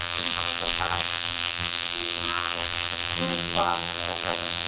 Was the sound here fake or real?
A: fake